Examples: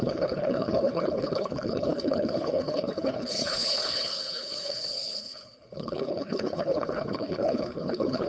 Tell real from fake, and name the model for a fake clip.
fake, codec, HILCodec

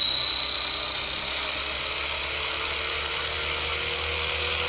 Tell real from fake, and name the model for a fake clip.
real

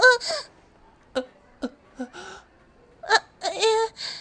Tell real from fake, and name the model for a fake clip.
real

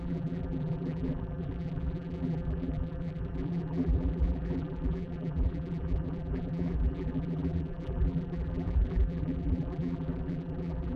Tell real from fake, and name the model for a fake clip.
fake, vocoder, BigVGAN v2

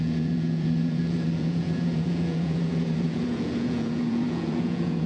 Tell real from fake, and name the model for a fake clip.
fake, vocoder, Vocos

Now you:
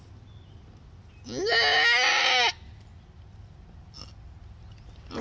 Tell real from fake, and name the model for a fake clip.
real